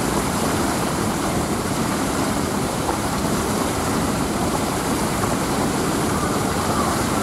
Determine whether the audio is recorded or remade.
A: remade